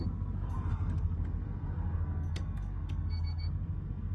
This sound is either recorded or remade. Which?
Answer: remade